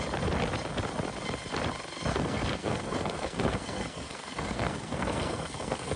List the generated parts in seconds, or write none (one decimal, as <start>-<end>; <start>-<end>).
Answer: 2.1-6.0